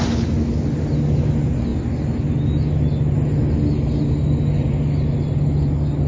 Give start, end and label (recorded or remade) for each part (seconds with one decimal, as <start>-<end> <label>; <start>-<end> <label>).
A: 0.0-6.1 recorded